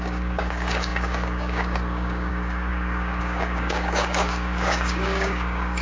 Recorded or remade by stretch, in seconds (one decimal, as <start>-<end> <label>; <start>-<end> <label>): 0.0-5.8 remade